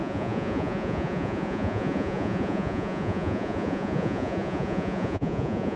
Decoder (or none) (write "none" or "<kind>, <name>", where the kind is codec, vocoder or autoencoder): vocoder, Vocos